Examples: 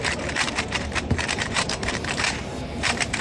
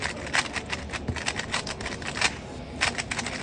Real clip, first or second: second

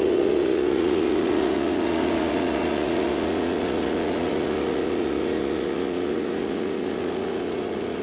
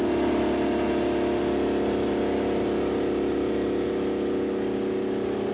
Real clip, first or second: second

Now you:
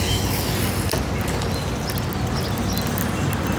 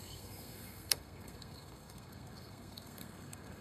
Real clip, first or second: first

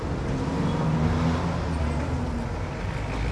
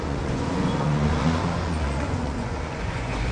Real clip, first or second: first